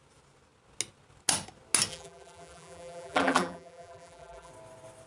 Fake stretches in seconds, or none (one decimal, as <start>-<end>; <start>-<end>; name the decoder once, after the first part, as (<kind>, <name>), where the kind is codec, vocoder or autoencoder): 1.9-4.5 (vocoder, BigVGAN v2)